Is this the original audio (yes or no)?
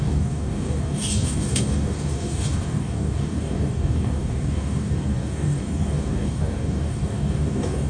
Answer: no